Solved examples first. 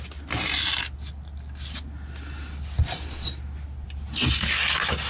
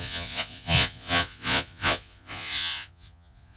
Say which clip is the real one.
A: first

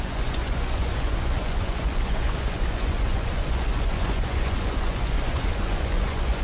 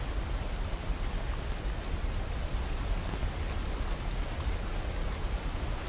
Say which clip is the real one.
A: second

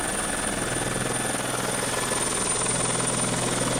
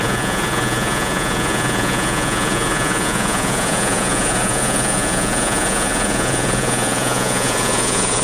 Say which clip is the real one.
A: first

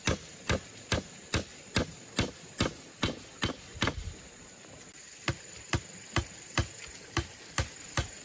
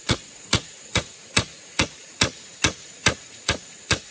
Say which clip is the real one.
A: first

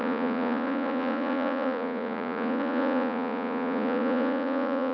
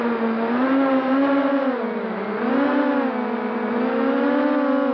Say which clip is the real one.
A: second